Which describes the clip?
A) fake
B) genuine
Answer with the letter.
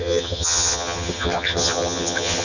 A